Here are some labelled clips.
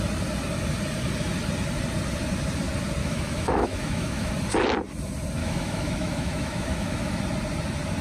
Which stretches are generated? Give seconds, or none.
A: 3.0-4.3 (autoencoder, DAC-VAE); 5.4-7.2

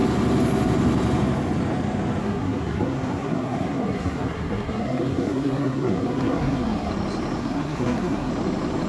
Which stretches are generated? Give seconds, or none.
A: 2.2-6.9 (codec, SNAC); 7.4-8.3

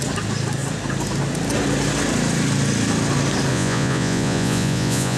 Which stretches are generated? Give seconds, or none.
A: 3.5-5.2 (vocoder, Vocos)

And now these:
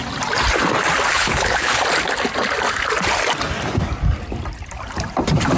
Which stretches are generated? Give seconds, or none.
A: 1.1-1.8 (codec, HILCodec)